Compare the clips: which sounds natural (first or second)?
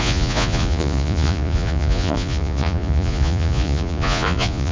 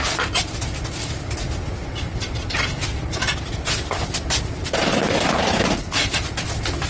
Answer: second